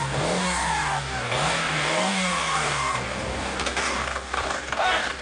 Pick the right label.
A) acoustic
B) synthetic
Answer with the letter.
B